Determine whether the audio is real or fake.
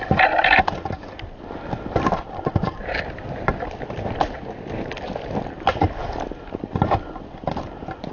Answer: fake